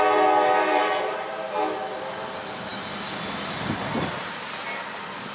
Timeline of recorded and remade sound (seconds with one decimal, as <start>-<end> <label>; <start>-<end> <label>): 0.0-0.7 recorded; 0.7-1.3 remade; 1.3-5.3 recorded